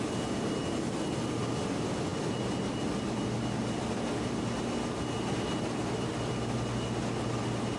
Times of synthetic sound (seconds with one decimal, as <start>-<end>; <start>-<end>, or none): none